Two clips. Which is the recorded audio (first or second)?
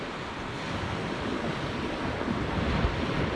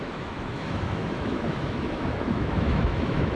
first